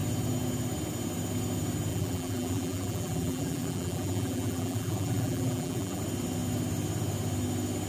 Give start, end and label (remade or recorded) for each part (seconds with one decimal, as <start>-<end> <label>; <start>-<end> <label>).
0.0-1.9 recorded; 1.9-6.0 remade; 6.0-7.9 recorded